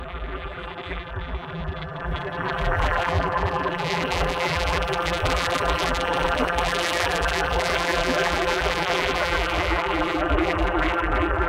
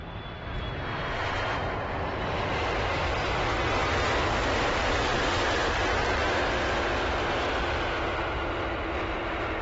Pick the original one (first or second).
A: second